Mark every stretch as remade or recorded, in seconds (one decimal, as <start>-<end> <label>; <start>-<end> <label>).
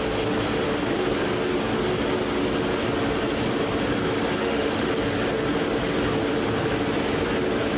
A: 0.0-4.4 recorded; 4.4-4.9 remade; 4.9-7.8 recorded